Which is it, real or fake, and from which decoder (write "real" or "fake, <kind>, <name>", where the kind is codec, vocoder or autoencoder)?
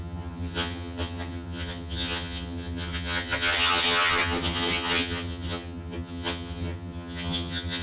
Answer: fake, vocoder, HiFi-GAN